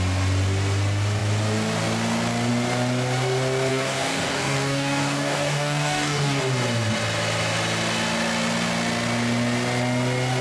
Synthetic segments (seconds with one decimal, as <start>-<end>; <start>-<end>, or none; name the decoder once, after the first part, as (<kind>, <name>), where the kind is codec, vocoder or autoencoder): 3.7-6.4 (codec, DAC)